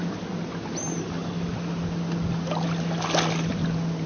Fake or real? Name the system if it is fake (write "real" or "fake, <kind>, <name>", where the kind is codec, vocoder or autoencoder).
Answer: real